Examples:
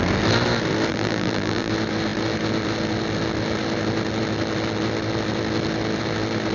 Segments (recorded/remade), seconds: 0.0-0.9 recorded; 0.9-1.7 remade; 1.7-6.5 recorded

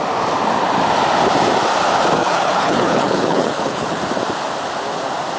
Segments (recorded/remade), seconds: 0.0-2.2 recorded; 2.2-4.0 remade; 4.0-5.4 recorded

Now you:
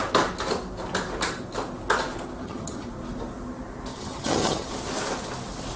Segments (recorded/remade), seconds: 0.0-2.4 recorded; 2.4-2.9 remade; 2.9-3.9 recorded; 3.9-4.7 remade; 4.7-5.8 recorded

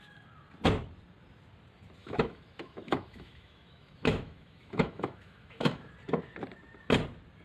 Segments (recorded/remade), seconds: 0.0-2.0 recorded; 2.0-5.9 remade; 5.9-7.4 recorded

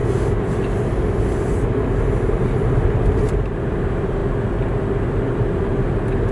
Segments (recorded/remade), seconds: 0.0-6.3 recorded